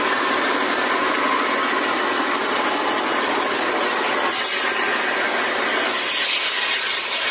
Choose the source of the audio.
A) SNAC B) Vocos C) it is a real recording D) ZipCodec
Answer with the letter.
C